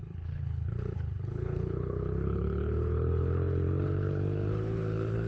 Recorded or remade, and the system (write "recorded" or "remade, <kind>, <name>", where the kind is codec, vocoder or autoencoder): remade, codec, HILCodec